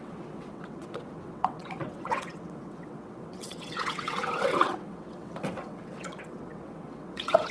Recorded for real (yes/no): no